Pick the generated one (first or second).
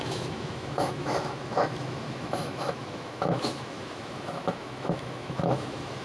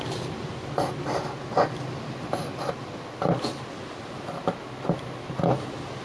first